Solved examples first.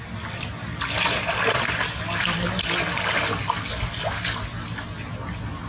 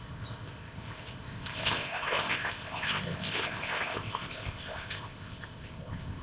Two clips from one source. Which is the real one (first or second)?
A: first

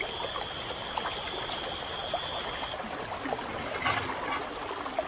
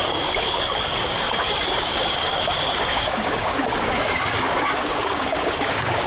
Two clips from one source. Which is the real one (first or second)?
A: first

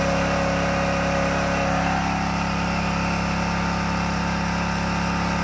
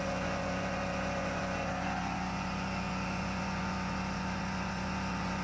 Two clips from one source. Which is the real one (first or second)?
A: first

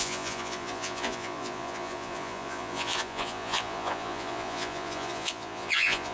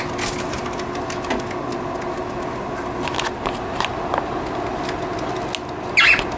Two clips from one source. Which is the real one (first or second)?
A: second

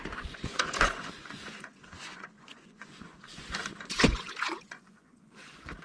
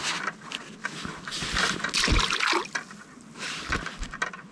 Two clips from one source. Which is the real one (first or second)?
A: second